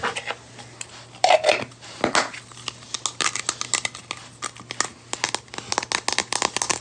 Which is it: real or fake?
real